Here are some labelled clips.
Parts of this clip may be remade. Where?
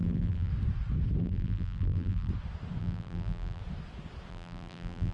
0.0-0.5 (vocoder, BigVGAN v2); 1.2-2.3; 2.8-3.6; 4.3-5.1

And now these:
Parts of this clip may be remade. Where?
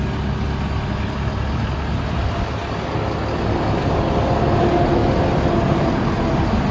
none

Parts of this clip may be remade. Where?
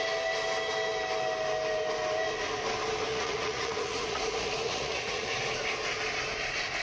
3.1-5.4 (vocoder, Vocos)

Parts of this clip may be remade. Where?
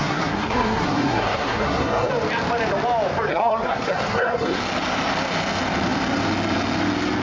0.0-2.1 (codec, SNAC); 3.3-4.6